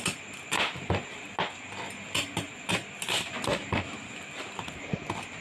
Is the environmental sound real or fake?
real